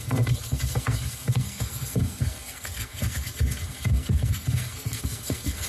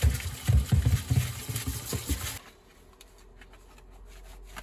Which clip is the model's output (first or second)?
first